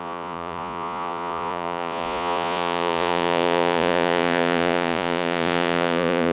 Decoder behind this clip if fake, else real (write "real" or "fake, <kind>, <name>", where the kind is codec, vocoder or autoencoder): fake, vocoder, Vocos